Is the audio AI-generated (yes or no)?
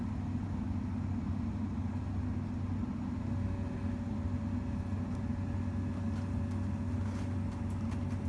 no